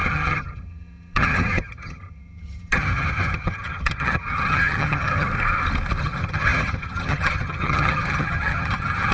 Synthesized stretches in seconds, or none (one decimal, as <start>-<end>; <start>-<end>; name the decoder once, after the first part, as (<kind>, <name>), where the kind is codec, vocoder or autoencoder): 0.0-5.3 (vocoder, HiFi-GAN); 6.0-9.1